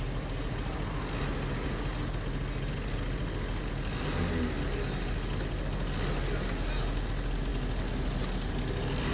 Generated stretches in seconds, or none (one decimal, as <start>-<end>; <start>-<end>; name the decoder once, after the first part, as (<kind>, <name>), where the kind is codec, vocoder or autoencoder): none